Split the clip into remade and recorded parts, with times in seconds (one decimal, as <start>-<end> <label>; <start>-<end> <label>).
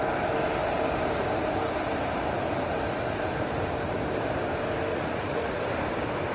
0.0-4.9 recorded; 4.9-5.6 remade; 5.6-6.3 recorded